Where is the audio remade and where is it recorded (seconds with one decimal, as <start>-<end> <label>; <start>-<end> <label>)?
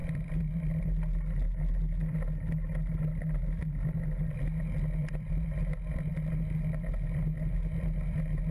0.0-0.8 remade; 0.8-5.0 recorded; 5.0-6.1 remade; 6.1-8.5 recorded